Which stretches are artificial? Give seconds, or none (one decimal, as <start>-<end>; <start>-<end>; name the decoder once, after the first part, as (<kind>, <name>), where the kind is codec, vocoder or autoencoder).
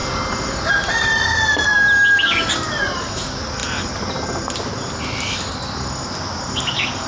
none